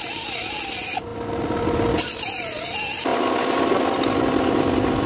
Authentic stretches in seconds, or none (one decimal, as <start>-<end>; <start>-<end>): 0.0-5.1